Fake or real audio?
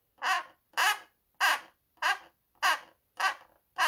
real